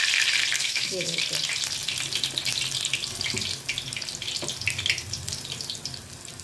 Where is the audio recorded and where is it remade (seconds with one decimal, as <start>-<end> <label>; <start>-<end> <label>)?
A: 0.0-0.6 recorded; 0.6-1.2 remade; 1.2-6.4 recorded